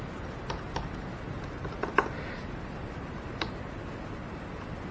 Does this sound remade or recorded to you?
recorded